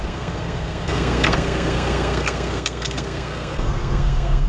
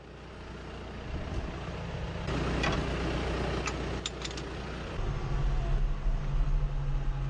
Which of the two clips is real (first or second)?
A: second